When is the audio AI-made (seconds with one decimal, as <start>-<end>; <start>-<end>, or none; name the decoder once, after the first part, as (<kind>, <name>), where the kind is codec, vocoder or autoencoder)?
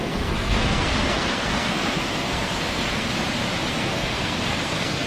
0.0-3.1 (codec, SNAC); 3.7-5.1